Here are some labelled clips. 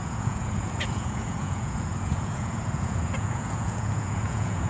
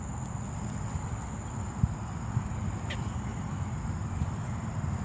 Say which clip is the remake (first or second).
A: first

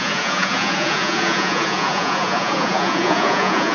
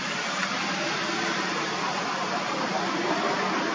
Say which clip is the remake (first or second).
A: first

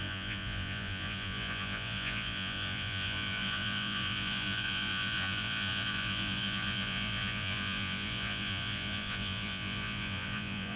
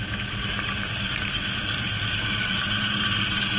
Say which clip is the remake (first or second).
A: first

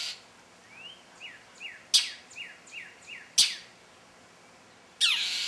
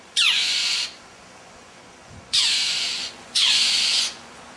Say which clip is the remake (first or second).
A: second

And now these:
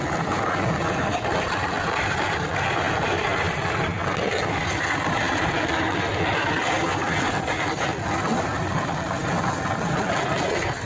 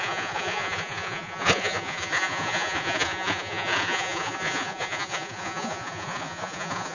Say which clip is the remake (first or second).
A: second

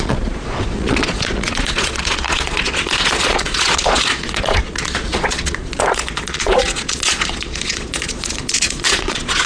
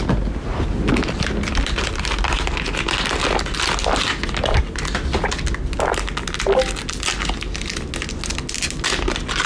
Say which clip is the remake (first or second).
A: first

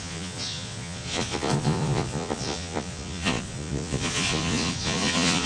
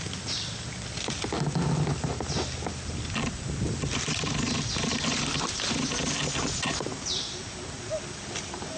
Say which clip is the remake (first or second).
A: first